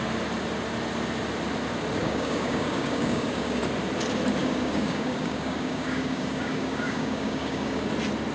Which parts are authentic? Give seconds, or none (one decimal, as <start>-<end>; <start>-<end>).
0.0-2.0; 3.6-4.4; 7.9-8.3

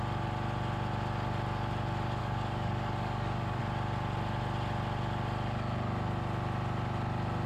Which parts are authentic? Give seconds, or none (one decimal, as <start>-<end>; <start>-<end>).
0.0-2.2; 3.6-7.5